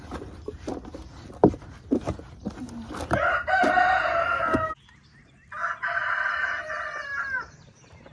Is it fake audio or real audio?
real